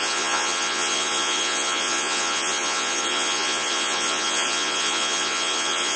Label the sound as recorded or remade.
remade